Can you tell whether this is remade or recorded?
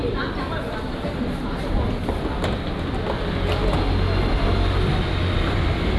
recorded